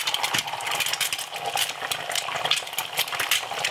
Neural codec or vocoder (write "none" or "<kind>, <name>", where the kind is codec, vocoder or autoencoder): none